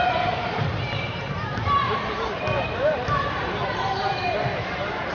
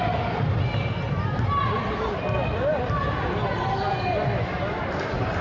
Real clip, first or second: second